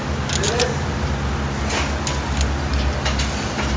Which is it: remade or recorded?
recorded